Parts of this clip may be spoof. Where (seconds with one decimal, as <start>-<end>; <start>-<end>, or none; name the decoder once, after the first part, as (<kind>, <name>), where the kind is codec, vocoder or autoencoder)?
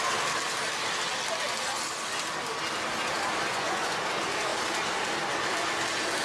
3.5-4.0 (vocoder, Vocos)